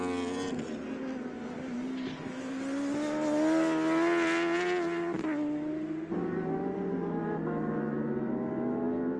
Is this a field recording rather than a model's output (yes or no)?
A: yes